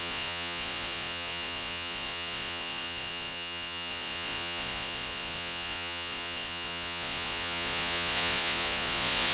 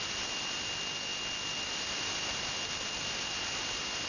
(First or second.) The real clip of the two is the second